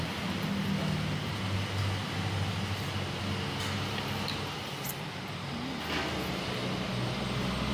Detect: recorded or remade recorded